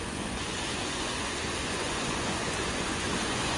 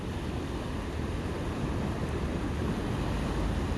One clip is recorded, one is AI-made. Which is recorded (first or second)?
second